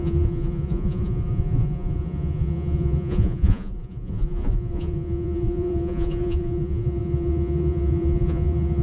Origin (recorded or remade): remade